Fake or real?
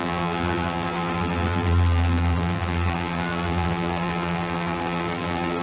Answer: fake